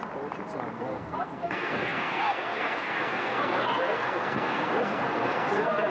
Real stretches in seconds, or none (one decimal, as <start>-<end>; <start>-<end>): 0.0-0.7